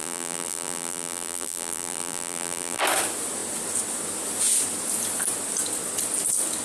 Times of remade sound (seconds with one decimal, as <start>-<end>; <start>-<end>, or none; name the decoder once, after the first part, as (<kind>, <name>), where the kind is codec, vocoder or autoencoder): 0.0-2.8 (vocoder, BigVGAN v2)